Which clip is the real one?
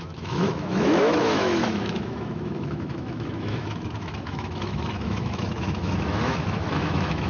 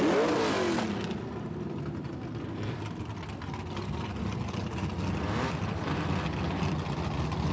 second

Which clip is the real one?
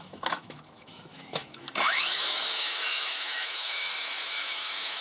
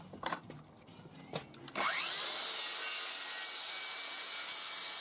second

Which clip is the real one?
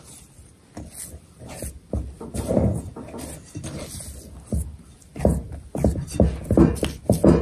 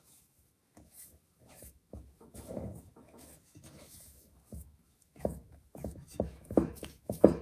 first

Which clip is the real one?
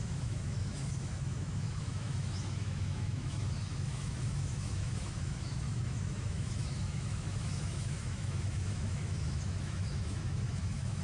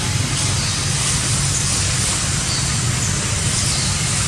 second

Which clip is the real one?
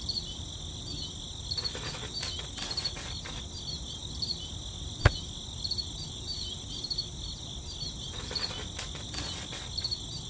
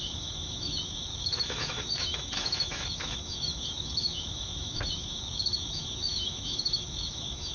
first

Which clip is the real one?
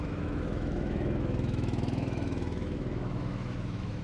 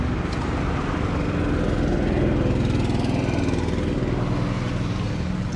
second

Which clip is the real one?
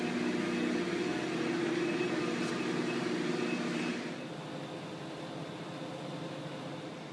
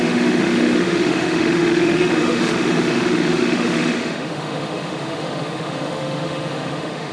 first